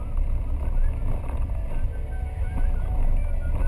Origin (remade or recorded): recorded